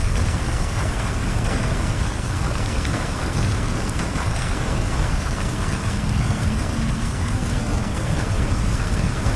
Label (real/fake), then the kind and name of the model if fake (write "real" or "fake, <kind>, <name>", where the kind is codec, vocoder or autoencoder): fake, codec, SNAC